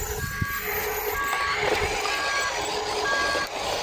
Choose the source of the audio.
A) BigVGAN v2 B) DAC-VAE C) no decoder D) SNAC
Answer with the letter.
C